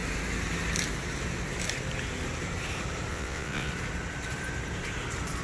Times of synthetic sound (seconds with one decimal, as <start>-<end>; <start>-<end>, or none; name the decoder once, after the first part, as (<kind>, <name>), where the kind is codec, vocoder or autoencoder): 3.1-3.7 (vocoder, WaveNeXt)